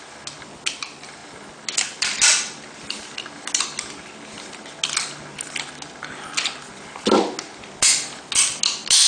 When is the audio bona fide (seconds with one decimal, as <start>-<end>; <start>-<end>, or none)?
0.0-9.1